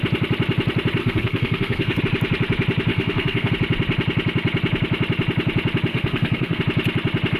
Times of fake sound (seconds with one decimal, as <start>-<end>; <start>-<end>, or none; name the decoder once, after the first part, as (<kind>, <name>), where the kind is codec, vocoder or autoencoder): 1.0-2.0 (codec, SNAC); 2.9-3.5; 5.9-6.6